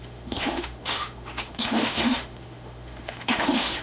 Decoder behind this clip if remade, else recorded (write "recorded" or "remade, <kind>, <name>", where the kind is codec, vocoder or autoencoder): remade, autoencoder, DAC-VAE